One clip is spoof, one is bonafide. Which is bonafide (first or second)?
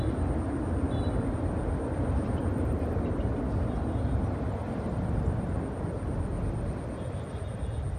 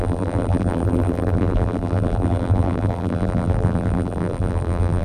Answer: first